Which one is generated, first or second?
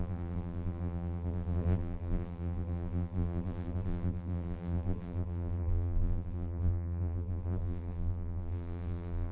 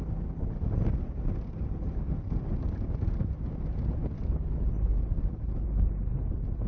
first